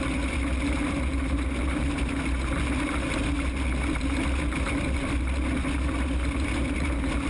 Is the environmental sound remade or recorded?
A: recorded